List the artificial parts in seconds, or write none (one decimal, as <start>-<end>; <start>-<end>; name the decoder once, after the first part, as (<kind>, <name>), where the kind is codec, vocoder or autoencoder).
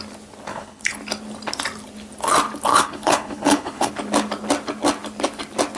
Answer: 0.5-1.0 (codec, HILCodec); 2.7-3.9